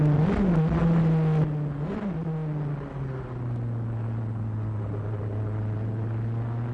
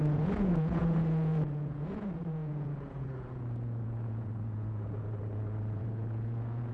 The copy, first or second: second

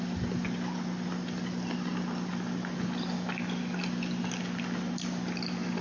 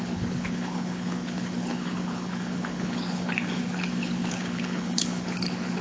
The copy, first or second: second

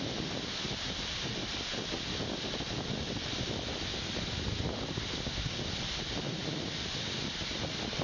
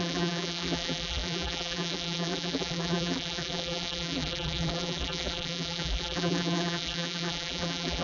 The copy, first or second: second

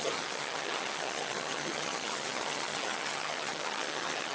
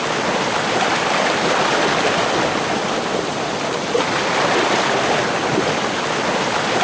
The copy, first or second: first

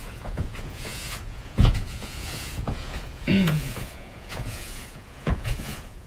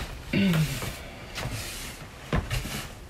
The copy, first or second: first